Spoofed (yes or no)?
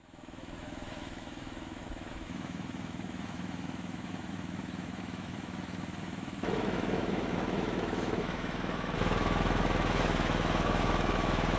yes